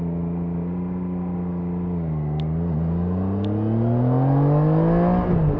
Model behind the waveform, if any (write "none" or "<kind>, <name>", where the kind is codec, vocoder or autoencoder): none